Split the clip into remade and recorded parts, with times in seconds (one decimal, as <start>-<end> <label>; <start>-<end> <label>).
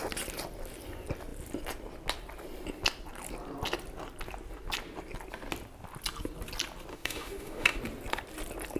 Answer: 0.0-6.9 recorded; 6.9-7.8 remade; 7.8-8.8 recorded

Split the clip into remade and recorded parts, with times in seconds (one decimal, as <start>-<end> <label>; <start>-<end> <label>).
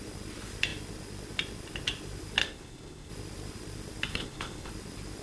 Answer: 0.0-2.4 recorded; 2.4-3.1 remade; 3.1-4.1 recorded; 4.1-4.7 remade; 4.7-5.2 recorded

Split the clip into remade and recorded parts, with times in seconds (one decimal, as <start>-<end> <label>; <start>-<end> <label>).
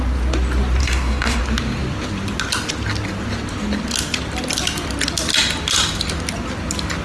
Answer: 0.0-0.8 recorded; 0.8-1.4 remade; 1.4-7.0 recorded